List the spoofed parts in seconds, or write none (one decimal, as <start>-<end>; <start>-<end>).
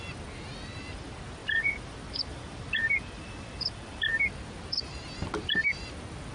1.4-4.0